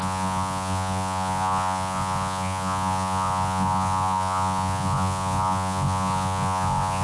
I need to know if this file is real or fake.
fake